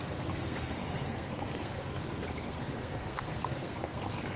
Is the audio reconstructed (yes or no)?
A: yes